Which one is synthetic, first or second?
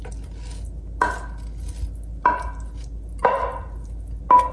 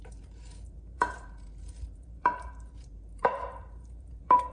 second